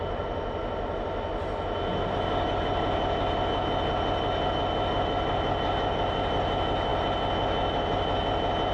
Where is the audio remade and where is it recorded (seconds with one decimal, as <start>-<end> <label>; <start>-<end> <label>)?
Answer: 0.0-8.7 recorded